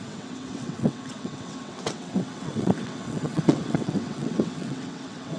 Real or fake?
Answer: fake